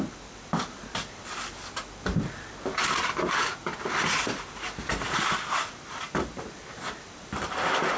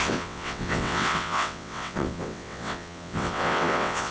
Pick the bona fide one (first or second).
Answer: first